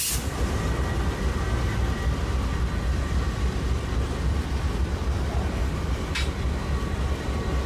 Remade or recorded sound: recorded